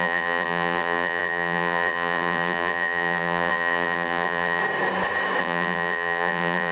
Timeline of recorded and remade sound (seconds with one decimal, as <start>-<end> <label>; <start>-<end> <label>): 0.0-4.6 remade; 4.6-5.4 recorded; 5.4-6.7 remade